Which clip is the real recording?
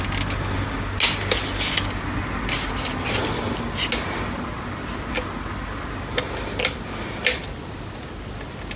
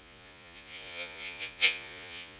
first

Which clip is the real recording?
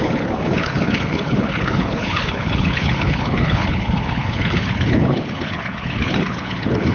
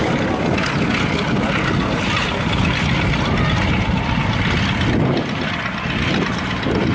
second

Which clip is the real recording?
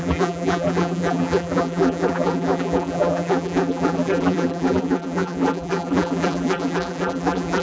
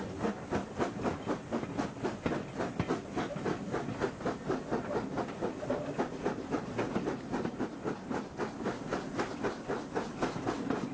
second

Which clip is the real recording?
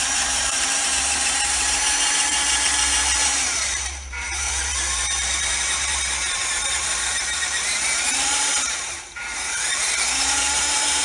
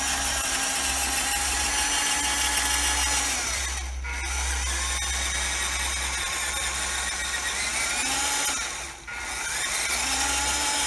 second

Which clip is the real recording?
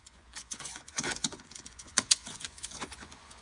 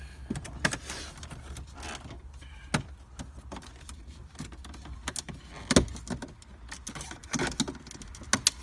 second